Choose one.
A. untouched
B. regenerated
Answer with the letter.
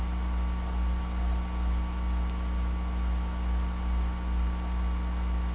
A